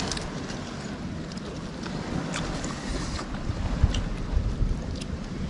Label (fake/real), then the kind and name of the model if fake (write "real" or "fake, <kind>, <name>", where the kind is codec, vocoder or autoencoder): real